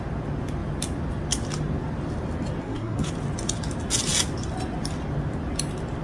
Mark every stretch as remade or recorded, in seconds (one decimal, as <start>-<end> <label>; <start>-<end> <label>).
0.0-2.6 recorded; 2.6-3.1 remade; 3.1-6.0 recorded